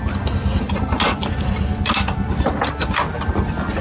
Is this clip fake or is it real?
real